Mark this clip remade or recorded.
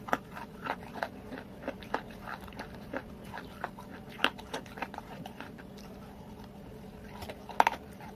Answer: recorded